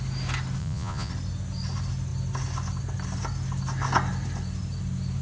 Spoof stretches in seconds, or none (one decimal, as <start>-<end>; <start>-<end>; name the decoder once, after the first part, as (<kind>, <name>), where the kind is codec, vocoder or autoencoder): 0.6-1.1 (vocoder, Vocos)